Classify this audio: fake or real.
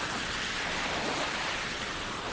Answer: real